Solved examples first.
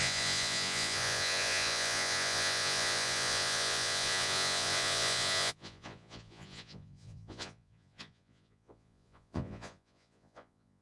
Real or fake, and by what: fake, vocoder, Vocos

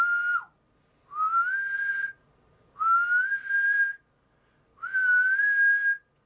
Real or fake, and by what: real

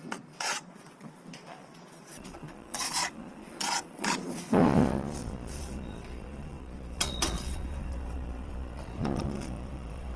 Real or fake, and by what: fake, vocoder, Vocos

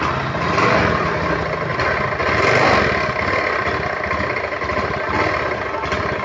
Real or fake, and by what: real